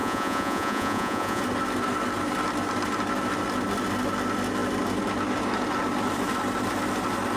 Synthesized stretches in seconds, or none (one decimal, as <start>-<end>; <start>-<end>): 0.0-1.4